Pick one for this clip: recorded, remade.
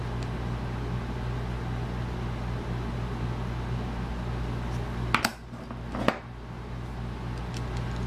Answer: recorded